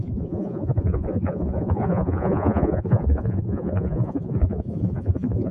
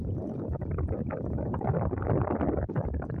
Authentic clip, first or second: second